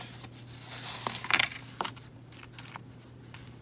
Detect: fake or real real